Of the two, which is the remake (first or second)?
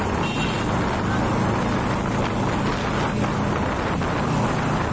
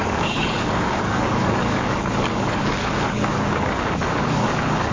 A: second